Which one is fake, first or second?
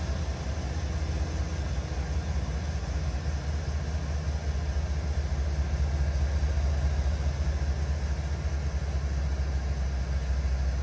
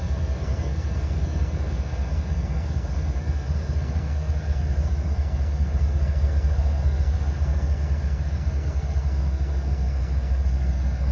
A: second